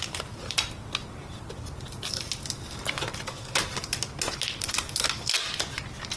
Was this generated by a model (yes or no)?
no